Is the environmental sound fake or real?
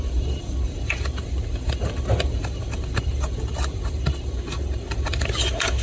fake